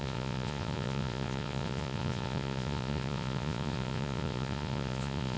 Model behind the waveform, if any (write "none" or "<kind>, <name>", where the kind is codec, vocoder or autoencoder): vocoder, Vocos